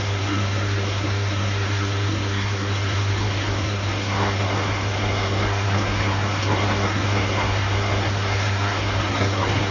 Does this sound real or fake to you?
fake